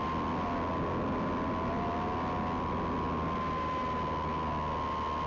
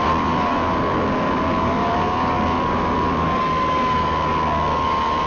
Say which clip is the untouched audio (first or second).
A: first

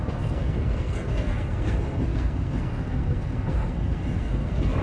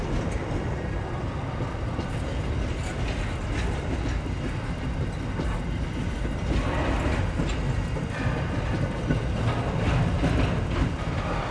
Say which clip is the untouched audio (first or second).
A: second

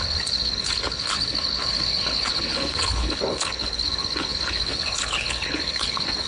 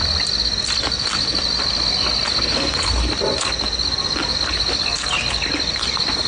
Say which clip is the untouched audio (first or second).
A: second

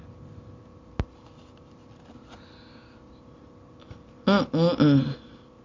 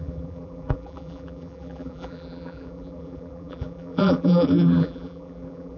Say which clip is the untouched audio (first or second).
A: first